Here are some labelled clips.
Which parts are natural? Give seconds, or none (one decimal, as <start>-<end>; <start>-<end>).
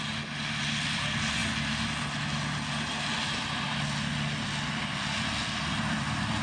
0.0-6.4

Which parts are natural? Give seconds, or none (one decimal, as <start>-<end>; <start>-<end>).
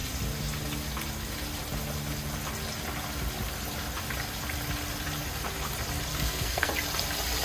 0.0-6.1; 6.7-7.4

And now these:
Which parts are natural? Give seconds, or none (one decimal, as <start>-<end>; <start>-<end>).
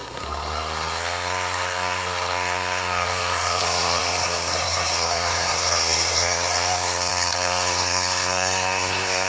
none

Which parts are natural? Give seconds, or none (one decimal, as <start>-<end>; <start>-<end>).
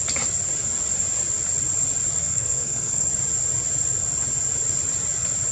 0.0-2.2; 3.1-5.5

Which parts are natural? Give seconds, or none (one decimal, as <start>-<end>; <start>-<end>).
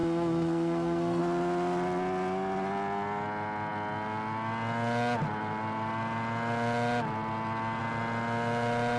1.2-9.0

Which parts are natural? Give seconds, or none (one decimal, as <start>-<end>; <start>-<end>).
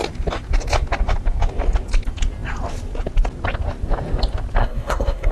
0.0-4.6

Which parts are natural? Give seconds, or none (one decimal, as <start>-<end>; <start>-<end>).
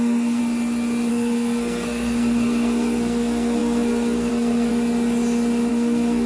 0.4-1.1; 4.7-5.7